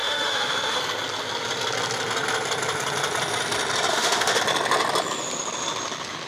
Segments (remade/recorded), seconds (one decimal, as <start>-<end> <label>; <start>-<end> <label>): 0.0-0.8 remade; 0.8-3.9 recorded; 3.9-4.4 remade; 4.4-6.3 recorded